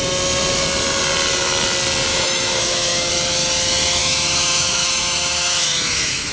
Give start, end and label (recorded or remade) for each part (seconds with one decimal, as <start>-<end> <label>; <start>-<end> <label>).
0.0-2.1 recorded; 2.1-3.1 remade; 3.1-4.0 recorded; 4.0-6.3 remade